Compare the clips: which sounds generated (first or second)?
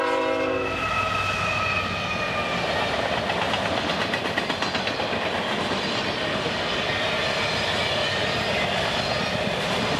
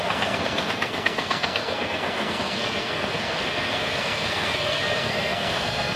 second